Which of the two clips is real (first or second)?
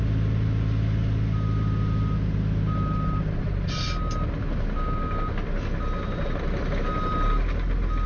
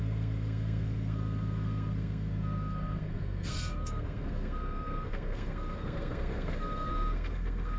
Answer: first